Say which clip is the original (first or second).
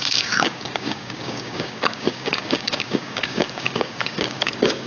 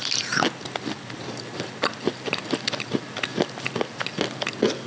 second